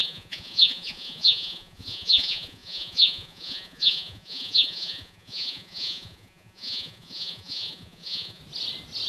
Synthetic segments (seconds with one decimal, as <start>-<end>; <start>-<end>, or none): 0.0-8.4